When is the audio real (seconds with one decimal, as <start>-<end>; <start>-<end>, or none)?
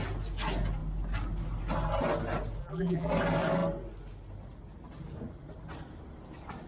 0.0-2.6; 3.1-6.7